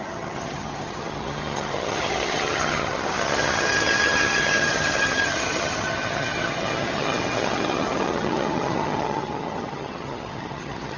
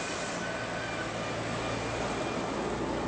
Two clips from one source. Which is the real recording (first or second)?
second